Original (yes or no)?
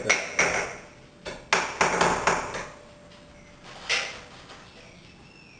yes